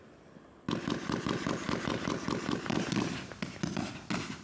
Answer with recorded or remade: recorded